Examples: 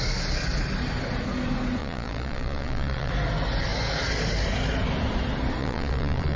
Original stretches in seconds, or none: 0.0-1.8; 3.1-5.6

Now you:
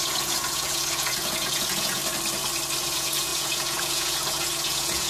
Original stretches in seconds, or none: 2.0-2.8

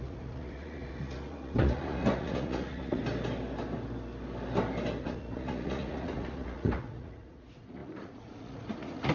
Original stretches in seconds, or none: 3.0-5.0